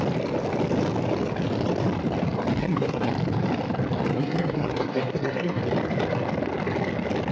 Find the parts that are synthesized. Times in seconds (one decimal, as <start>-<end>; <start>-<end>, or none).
2.6-3.1; 4.1-5.6